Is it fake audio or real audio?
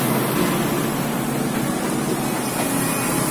real